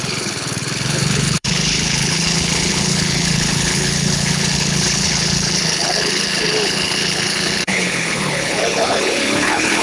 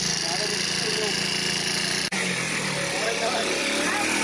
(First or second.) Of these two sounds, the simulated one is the first